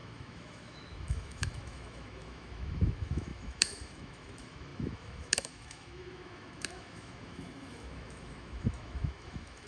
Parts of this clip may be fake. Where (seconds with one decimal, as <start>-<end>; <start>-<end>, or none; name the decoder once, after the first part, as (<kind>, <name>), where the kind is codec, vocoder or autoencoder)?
0.0-9.7 (autoencoder, DAC-VAE)